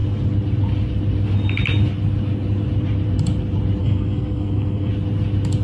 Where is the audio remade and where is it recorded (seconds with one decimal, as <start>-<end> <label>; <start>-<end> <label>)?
0.0-3.8 recorded; 3.8-4.9 remade; 4.9-5.6 recorded